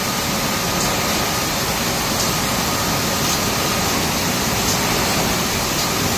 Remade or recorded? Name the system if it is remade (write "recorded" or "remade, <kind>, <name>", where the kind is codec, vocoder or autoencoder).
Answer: recorded